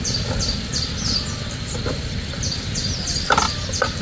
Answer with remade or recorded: recorded